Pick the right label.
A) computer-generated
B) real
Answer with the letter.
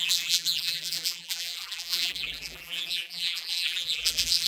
A